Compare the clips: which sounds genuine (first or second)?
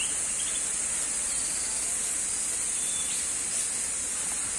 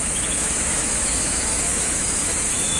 first